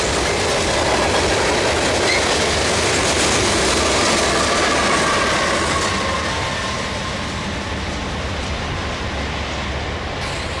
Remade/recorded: recorded